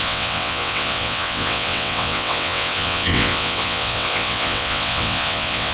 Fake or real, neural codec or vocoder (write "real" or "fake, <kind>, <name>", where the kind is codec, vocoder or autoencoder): fake, vocoder, WaveNeXt